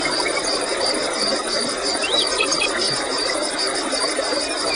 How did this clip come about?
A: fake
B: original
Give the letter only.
A